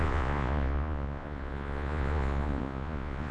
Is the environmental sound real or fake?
fake